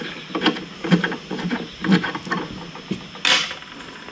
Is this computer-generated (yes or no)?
no